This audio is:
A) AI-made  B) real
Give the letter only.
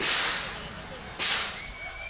B